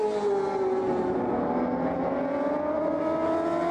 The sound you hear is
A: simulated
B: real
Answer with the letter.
B